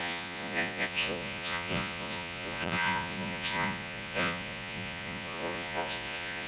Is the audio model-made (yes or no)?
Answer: yes